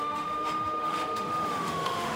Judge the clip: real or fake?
fake